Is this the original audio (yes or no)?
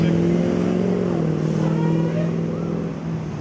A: yes